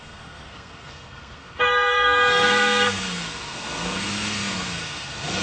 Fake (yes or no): yes